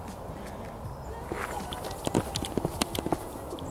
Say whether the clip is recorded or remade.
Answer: recorded